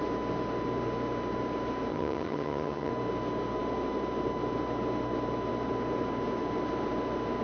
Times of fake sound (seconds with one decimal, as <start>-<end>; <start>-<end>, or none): 1.9-2.9